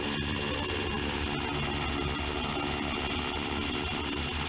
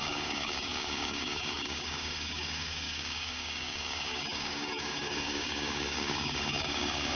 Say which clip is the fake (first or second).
second